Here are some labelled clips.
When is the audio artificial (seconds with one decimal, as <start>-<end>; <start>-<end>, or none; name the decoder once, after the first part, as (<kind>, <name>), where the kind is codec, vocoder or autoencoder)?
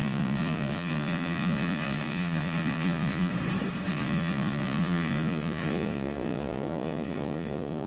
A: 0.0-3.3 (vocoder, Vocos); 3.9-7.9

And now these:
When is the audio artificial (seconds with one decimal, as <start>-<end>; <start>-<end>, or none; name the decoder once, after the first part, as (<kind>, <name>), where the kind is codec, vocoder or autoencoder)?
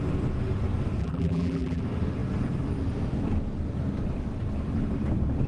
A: 1.0-1.8 (vocoder, BigVGAN v2)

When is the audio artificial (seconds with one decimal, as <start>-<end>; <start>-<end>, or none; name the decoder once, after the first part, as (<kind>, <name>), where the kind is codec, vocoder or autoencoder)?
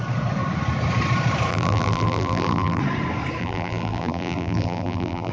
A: 1.5-2.8 (vocoder, BigVGAN v2); 3.4-5.3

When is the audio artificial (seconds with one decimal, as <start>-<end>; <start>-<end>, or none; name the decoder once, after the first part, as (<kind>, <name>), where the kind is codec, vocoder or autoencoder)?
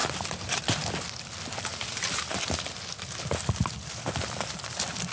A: none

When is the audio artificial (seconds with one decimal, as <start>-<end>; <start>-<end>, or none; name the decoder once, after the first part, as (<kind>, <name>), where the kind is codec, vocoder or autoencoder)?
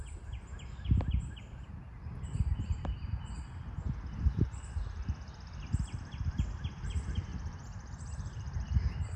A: 7.3-8.7 (vocoder, BigVGAN v2)